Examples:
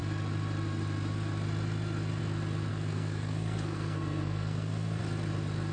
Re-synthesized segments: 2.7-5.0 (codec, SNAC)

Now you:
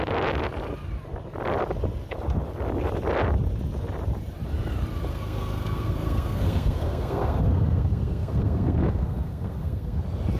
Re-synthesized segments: 5.1-10.0 (codec, SNAC)